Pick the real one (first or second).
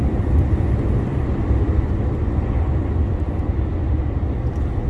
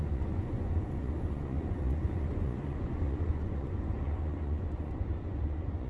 first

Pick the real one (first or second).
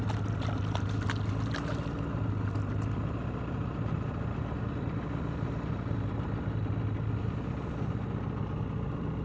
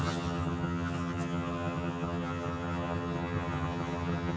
first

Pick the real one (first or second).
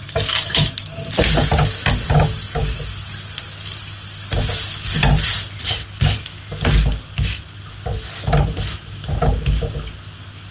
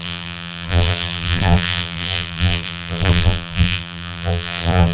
first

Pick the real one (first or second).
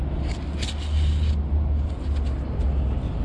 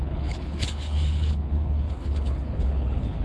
first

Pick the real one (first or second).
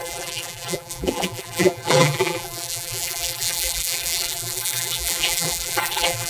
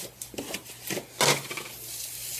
second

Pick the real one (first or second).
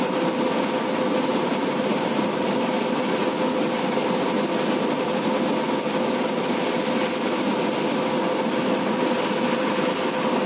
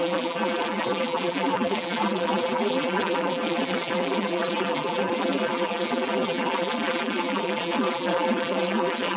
first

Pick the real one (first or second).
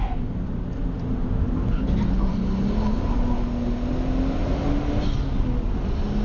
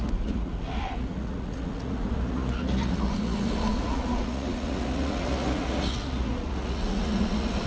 first